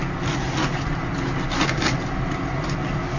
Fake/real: real